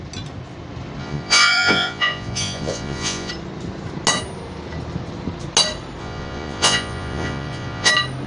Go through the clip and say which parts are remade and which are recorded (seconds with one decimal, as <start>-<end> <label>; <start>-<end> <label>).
0.0-1.0 recorded; 1.0-3.3 remade; 3.3-6.0 recorded; 6.0-7.9 remade; 7.9-8.3 recorded